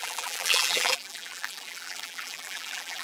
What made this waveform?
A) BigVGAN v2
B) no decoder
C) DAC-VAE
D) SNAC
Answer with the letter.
A